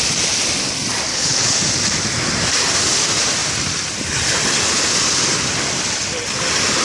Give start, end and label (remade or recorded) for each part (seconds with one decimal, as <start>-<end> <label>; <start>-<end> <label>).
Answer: 0.0-1.1 recorded; 1.1-1.6 remade; 1.6-6.8 recorded